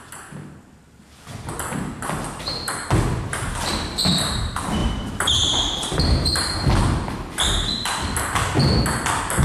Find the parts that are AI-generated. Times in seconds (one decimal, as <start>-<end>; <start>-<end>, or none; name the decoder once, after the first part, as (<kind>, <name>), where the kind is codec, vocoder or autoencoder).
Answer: 4.8-6.4 (vocoder, BigVGAN v2)